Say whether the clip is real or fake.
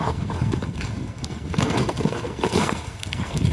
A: fake